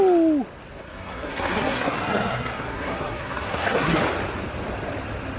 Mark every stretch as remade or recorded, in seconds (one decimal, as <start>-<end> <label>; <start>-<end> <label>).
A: 0.0-0.8 recorded; 0.8-4.0 remade; 4.0-5.4 recorded